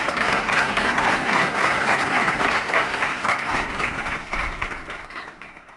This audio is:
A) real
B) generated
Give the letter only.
B